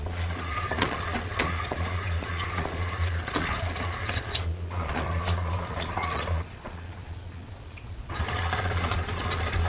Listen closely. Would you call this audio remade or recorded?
remade